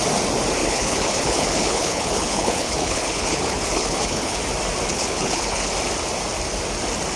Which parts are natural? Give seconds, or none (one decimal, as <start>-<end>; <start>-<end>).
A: 0.0-0.6; 4.4-4.9; 5.7-7.2